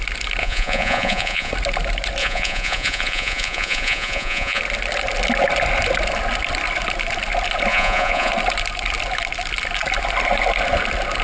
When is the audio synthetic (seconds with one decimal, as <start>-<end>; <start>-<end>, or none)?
0.4-1.5; 2.2-4.6; 7.7-8.3